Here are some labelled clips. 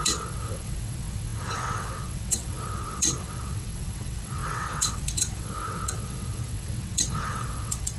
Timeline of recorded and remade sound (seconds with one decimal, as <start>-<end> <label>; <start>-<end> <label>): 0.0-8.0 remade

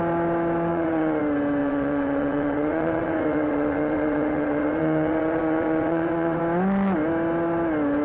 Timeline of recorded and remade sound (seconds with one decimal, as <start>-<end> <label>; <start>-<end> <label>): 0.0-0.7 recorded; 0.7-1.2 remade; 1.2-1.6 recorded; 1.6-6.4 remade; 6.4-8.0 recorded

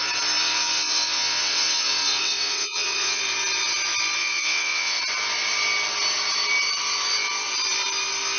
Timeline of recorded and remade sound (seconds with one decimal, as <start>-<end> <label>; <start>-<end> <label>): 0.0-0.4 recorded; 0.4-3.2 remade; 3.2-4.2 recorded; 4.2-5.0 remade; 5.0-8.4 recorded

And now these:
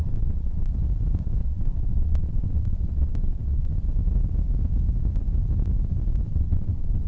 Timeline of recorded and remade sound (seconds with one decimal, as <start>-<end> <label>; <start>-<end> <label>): 0.0-0.7 remade; 0.7-1.4 recorded; 1.4-3.7 remade; 3.7-6.3 recorded; 6.3-7.1 remade